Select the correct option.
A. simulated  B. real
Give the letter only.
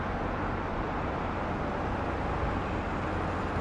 B